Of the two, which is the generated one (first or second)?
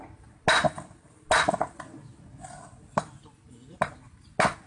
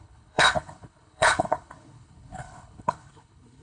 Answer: second